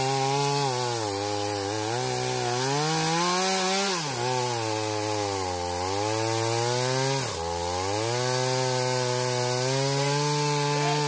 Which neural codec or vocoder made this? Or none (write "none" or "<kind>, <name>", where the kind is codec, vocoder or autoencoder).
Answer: none